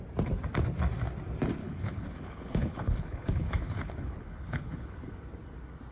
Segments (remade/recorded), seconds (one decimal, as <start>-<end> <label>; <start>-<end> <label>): 0.0-1.6 recorded; 1.6-5.1 remade; 5.1-5.9 recorded

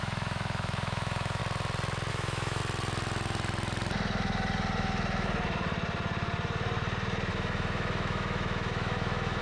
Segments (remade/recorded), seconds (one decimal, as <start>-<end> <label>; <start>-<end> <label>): 0.0-1.4 remade; 1.4-2.1 recorded; 2.1-2.6 remade; 2.6-7.3 recorded; 7.3-9.4 remade

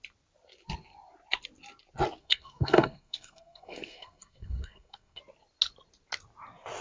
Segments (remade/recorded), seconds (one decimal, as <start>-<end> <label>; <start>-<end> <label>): 0.0-2.2 recorded; 2.2-5.2 remade; 5.2-6.8 recorded

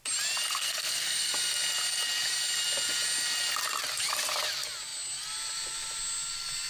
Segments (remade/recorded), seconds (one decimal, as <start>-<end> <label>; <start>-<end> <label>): 0.0-0.6 recorded; 0.6-1.3 remade; 1.3-6.7 recorded

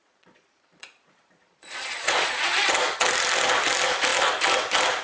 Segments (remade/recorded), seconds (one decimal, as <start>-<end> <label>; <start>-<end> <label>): 0.0-2.7 remade; 2.7-5.0 recorded